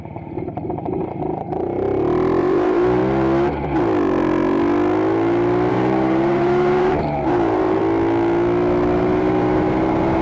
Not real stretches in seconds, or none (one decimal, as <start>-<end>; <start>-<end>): 0.0-1.0; 2.4-3.0; 5.7-7.8; 9.0-10.2